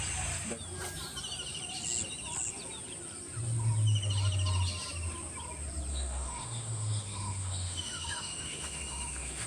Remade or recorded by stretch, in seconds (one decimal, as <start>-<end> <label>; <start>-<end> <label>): 0.0-5.9 recorded; 5.9-9.5 remade

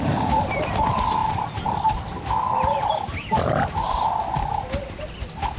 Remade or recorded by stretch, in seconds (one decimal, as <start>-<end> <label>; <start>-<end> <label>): 0.0-5.6 recorded

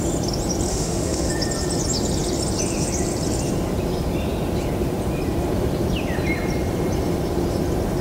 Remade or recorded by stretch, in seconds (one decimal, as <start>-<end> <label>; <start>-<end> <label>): 0.0-0.7 recorded; 0.7-1.3 remade; 1.3-8.0 recorded

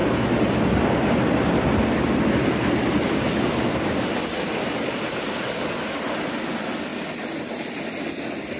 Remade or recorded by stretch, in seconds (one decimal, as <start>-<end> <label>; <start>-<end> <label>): 0.0-8.6 recorded

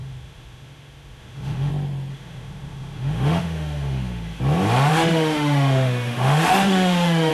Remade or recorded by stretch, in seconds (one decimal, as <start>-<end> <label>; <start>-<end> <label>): 0.0-1.7 remade; 1.7-2.1 recorded; 2.1-4.4 remade; 4.4-4.9 recorded; 4.9-7.3 remade

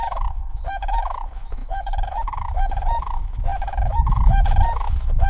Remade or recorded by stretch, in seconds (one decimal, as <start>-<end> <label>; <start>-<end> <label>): 0.0-5.3 remade

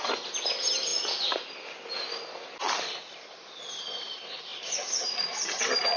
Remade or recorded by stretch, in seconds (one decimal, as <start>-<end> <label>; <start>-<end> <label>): 0.0-6.0 recorded

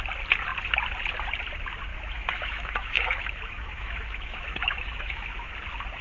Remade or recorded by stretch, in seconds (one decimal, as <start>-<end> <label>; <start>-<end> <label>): 0.0-1.9 recorded; 1.9-5.5 remade; 5.5-6.0 recorded